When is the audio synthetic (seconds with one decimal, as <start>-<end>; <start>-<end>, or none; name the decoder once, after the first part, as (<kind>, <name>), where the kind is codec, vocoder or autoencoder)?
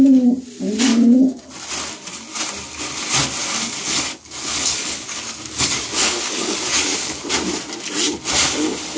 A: 0.9-1.5 (codec, DAC); 3.4-7.3